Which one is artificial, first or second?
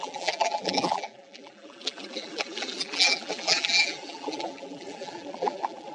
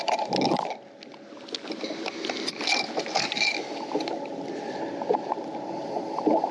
first